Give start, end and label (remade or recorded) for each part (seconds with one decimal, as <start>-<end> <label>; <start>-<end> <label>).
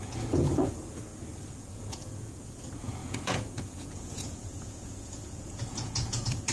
0.0-1.1 remade; 1.1-1.6 recorded; 1.6-6.5 remade